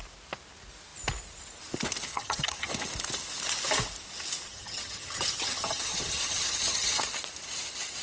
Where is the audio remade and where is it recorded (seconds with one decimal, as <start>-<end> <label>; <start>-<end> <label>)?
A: 0.0-2.1 recorded; 2.1-2.7 remade; 2.7-4.5 recorded; 4.5-7.0 remade; 7.0-8.0 recorded